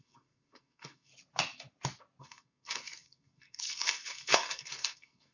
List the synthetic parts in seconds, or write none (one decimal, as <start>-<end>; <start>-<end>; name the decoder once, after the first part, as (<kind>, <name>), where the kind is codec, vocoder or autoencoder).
0.0-1.1 (codec, SNAC); 2.2-5.3